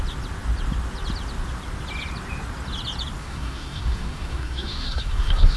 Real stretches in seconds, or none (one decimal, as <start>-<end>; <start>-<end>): 0.0-3.2

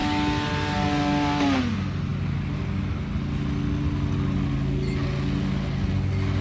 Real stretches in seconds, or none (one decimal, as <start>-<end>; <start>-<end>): 0.0-6.4

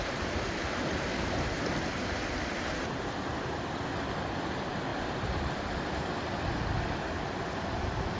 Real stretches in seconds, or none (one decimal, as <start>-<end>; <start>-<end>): 0.0-3.3; 3.9-4.9; 7.4-8.2

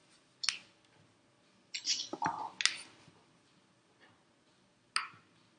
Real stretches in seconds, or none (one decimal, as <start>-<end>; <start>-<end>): 0.0-5.6

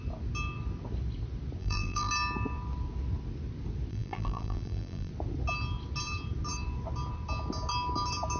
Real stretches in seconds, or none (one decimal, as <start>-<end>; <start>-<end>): 0.0-1.6; 2.1-3.9; 5.1-8.4